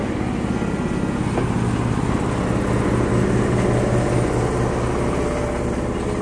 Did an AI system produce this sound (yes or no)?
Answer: no